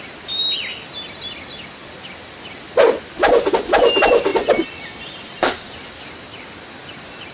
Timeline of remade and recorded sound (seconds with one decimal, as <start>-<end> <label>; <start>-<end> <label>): 0.0-7.3 recorded

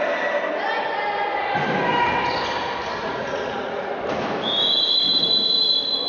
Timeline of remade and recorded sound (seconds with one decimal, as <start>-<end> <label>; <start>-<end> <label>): 0.0-3.0 recorded; 3.0-3.9 remade; 3.9-6.1 recorded